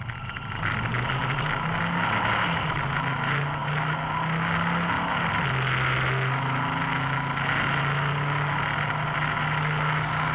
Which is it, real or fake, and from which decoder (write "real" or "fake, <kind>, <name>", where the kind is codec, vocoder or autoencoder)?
real